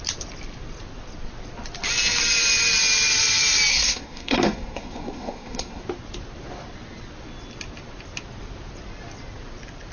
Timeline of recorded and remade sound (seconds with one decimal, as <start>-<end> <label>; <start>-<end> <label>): 0.0-3.7 recorded; 3.7-5.8 remade; 5.8-9.9 recorded

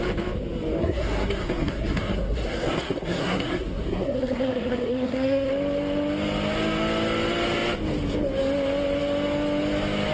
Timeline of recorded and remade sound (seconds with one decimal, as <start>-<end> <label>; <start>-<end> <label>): 0.0-0.8 recorded; 0.8-5.5 remade; 5.5-10.1 recorded